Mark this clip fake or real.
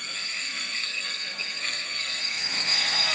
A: fake